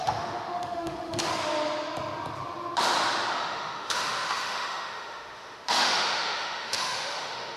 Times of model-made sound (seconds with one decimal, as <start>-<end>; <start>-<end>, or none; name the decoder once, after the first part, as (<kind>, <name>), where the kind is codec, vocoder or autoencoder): 0.0-1.3 (autoencoder, DAC-VAE); 3.3-7.6